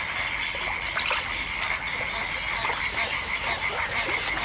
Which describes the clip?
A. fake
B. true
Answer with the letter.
B